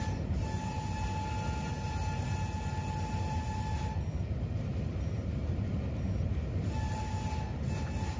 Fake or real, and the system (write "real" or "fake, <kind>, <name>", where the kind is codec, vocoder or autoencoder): real